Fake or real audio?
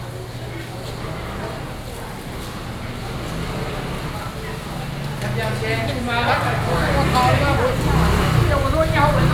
real